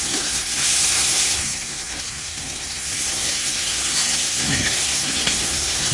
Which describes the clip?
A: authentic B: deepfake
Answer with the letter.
B